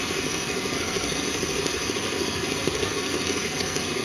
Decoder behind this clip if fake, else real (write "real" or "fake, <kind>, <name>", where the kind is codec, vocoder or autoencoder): fake, codec, SNAC